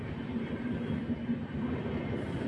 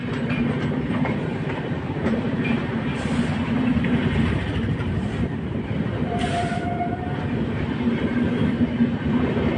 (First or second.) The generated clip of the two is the second